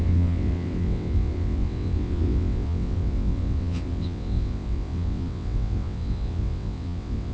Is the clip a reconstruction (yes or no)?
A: yes